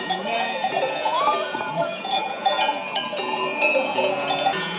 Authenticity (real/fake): fake